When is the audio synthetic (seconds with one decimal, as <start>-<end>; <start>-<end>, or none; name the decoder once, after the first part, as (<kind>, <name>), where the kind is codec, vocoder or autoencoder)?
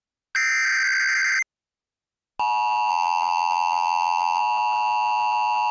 2.9-4.4 (vocoder, BigVGAN v2)